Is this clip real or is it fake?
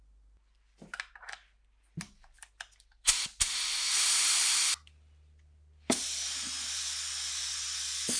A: real